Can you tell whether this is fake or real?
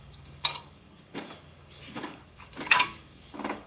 fake